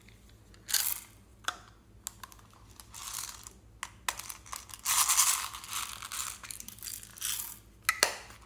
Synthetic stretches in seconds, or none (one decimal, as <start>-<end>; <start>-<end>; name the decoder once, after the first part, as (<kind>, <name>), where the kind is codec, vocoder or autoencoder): 1.3-1.9 (vocoder, BigVGAN v2)